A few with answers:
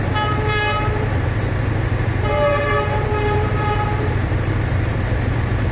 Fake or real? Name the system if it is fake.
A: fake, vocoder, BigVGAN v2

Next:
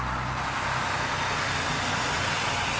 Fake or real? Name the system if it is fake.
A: real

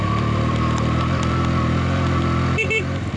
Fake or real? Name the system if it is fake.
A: fake, vocoder, BigVGAN v2